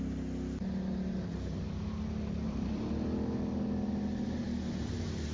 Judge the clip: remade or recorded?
recorded